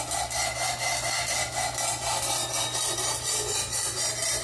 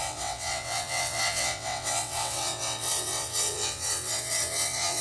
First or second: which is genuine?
first